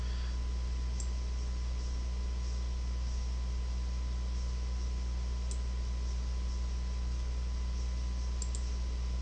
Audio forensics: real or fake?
real